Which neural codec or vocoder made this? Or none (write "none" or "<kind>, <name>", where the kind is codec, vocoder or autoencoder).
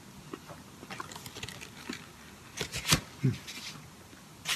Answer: none